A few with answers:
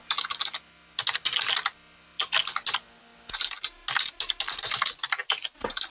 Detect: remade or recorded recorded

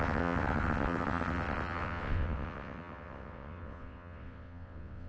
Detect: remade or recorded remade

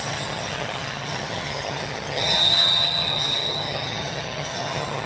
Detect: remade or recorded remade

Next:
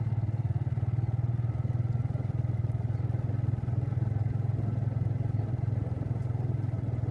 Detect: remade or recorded recorded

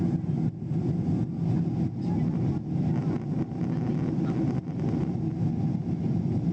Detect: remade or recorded recorded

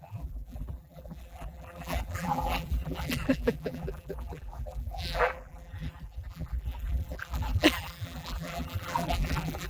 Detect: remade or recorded remade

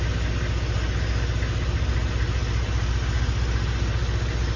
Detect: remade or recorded recorded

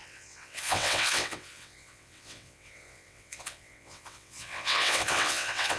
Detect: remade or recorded remade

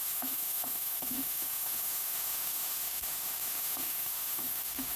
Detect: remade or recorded remade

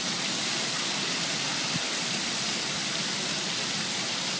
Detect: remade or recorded recorded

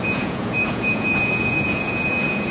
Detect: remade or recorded remade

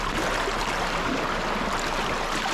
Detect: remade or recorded recorded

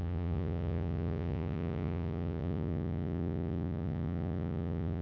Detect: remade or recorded remade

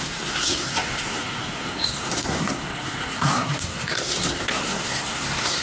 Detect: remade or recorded remade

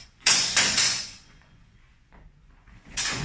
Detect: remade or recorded remade